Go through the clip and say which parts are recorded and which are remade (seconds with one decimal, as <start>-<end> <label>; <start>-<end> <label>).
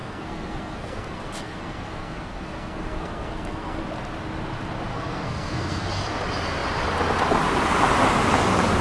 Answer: 0.0-3.8 remade; 3.8-4.9 recorded; 4.9-6.0 remade; 6.0-8.8 recorded